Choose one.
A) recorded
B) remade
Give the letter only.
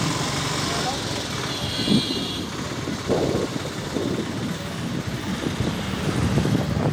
A